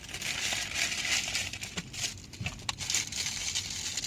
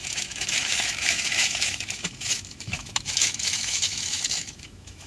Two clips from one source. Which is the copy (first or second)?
second